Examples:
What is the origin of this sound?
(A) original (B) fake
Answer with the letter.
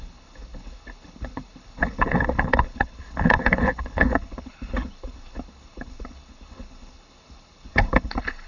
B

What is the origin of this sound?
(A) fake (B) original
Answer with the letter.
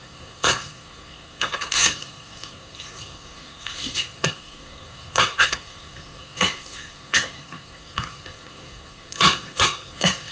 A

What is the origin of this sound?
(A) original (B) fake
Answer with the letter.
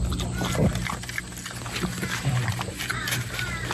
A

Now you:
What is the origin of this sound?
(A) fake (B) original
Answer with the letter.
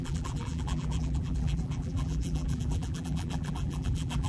A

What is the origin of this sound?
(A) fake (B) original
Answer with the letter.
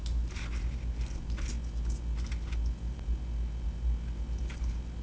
B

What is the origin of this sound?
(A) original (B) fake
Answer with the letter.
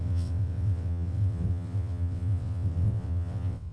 B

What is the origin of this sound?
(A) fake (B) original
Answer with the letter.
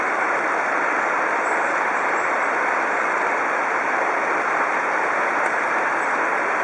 A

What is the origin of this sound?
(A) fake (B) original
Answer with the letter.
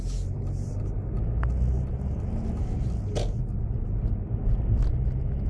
B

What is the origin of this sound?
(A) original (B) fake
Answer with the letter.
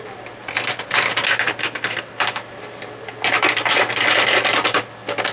A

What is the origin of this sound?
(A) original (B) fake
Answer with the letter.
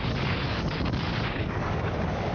B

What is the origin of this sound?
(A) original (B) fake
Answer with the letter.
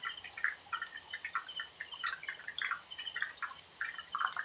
A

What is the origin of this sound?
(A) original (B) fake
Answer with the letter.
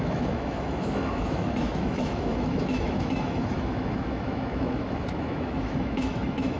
B